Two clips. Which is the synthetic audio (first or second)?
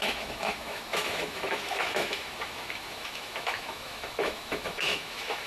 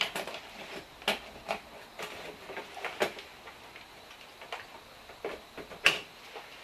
first